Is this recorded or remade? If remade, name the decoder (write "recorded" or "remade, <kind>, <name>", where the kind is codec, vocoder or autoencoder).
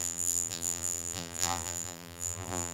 remade, vocoder, BigVGAN v2